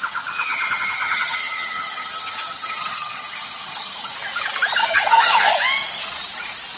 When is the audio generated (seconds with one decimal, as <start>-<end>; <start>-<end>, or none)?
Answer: 0.0-4.1; 4.8-5.5